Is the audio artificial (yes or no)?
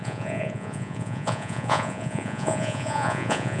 yes